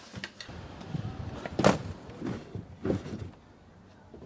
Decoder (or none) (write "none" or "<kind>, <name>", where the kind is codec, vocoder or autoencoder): none